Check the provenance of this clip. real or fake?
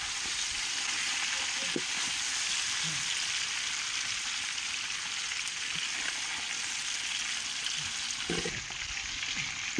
real